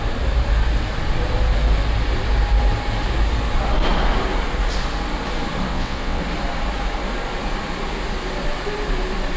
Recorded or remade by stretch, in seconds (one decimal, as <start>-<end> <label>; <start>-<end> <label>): 0.0-5.7 recorded; 5.7-6.2 remade; 6.2-9.4 recorded